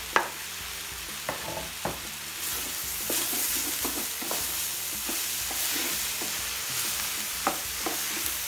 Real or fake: real